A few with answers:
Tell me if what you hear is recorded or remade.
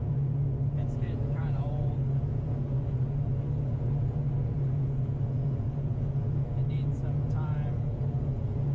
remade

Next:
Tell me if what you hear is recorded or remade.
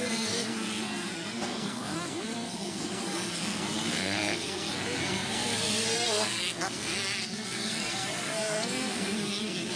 remade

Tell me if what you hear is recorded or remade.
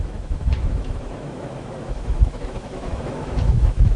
remade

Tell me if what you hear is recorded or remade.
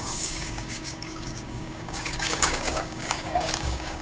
remade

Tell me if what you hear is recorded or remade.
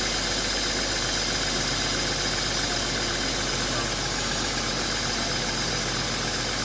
recorded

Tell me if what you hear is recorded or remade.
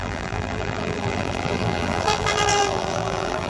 remade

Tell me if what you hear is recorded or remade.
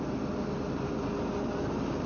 recorded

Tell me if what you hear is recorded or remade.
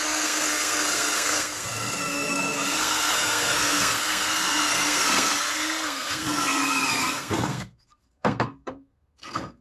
remade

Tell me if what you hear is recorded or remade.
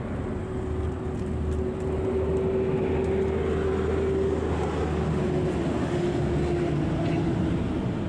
recorded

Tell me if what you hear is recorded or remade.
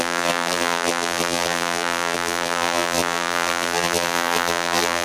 remade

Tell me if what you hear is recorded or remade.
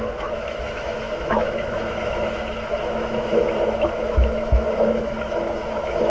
remade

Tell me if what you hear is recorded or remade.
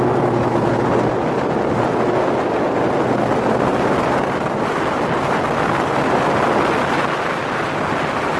recorded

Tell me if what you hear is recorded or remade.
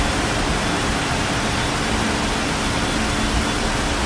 recorded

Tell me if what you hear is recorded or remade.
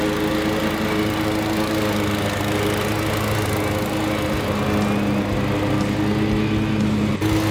recorded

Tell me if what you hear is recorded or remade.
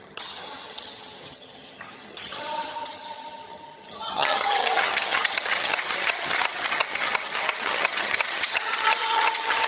remade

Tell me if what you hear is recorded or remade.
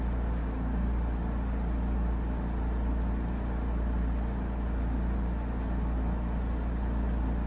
recorded